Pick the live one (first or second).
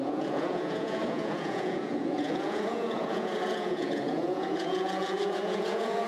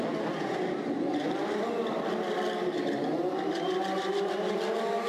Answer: second